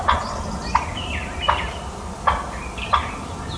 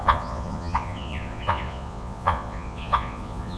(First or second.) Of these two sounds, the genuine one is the first